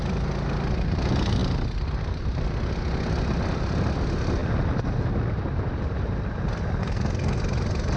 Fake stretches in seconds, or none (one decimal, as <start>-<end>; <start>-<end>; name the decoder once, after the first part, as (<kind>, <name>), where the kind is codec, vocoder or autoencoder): 6.8-7.4 (codec, SNAC)